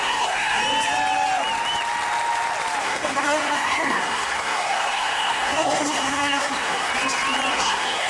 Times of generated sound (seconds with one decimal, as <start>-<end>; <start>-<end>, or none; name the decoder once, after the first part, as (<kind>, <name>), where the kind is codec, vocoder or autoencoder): 0.0-0.6 (codec, SNAC); 2.8-6.9; 7.5-8.1